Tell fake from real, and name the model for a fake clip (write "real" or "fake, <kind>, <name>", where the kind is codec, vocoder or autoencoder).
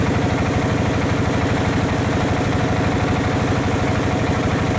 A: real